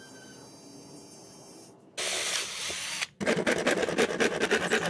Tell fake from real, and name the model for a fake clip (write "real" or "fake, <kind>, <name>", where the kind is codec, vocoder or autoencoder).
real